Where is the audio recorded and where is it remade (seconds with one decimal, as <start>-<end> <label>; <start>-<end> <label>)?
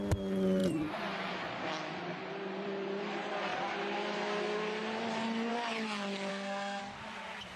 0.0-6.3 recorded; 6.3-6.8 remade; 6.8-7.6 recorded